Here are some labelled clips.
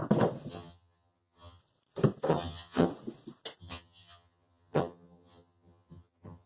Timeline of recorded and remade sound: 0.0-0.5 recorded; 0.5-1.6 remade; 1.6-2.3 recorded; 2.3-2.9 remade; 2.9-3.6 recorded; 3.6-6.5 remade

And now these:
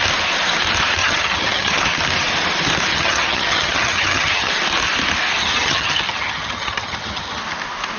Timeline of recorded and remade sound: 0.0-1.0 recorded; 1.0-1.8 remade; 1.8-2.9 recorded; 2.9-4.5 remade; 4.5-5.4 recorded; 5.4-7.4 remade; 7.4-8.0 recorded

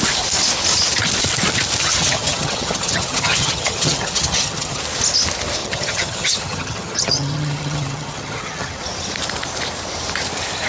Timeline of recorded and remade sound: 0.0-1.8 recorded; 1.8-4.8 remade; 4.8-5.6 recorded; 5.6-8.8 remade; 8.8-10.7 recorded

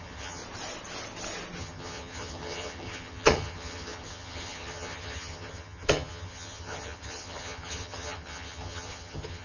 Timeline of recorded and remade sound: 0.0-0.4 remade; 0.4-1.6 recorded; 1.6-9.4 remade

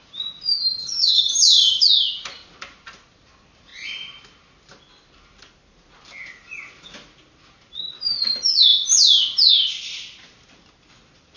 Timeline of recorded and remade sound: 0.0-0.8 recorded; 0.8-1.9 remade; 1.9-11.4 recorded

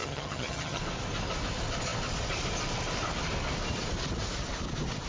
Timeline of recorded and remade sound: 0.0-0.8 remade; 0.8-5.1 recorded

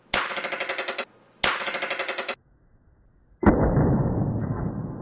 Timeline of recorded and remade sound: 0.0-5.0 recorded